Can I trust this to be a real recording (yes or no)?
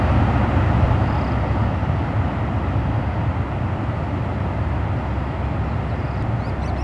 yes